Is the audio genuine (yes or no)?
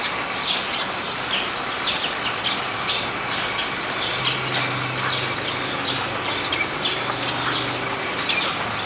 yes